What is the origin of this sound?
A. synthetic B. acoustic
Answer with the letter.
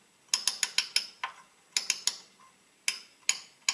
B